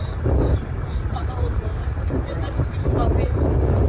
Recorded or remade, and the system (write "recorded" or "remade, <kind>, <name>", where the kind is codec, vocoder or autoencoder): remade, vocoder, BigVGAN v2